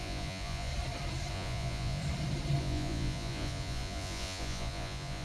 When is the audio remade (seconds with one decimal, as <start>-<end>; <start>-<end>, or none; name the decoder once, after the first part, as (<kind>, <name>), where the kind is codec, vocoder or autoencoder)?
0.0-0.7 (vocoder, Vocos); 1.3-2.0; 2.6-5.2